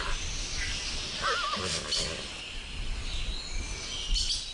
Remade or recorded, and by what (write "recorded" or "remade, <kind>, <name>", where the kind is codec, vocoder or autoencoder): recorded